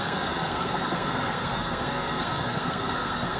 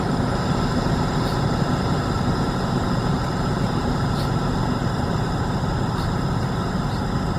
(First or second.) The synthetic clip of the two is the first